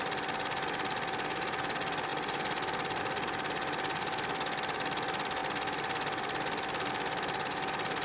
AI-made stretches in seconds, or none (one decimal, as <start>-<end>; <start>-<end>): none